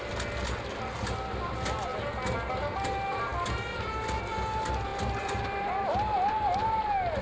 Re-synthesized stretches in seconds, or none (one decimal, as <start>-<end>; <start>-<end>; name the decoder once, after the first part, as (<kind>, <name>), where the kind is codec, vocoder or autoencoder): none